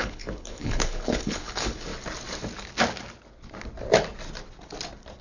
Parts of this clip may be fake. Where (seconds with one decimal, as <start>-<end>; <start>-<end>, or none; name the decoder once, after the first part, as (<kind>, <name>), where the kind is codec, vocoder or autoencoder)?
0.0-1.9 (codec, HILCodec)